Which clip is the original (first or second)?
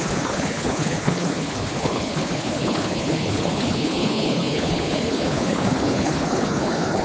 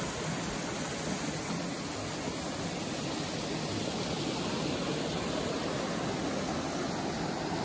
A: second